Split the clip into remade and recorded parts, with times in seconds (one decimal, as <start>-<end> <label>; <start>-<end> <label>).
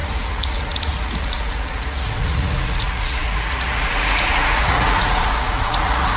0.0-6.2 remade